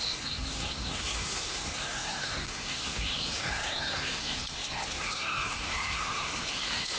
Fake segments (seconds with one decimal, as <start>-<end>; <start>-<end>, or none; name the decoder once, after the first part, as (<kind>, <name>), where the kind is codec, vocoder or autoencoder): 0.0-7.0 (codec, SNAC)